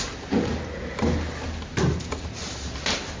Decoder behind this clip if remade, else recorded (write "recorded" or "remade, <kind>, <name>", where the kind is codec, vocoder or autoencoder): recorded